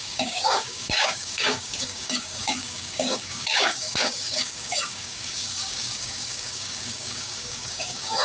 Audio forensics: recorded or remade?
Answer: remade